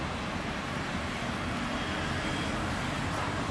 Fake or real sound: real